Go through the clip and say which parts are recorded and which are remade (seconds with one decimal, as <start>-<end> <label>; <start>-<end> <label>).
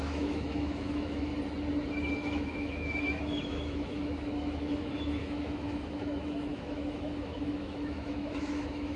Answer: 0.0-1.3 remade; 1.3-2.1 recorded; 2.1-9.0 remade